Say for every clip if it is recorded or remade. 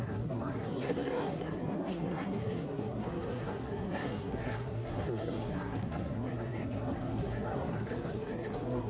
remade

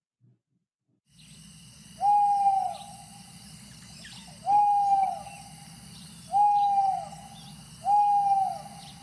recorded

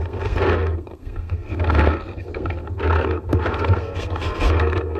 remade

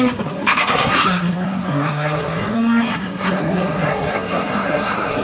remade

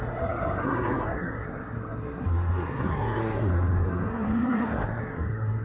remade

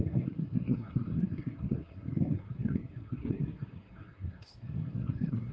remade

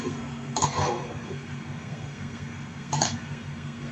remade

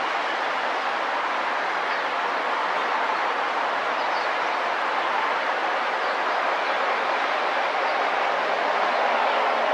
recorded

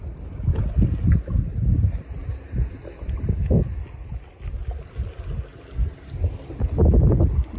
recorded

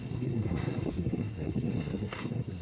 remade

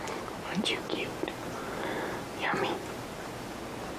recorded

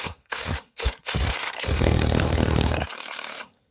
remade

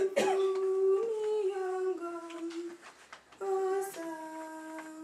recorded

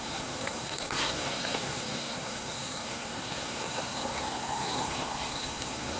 remade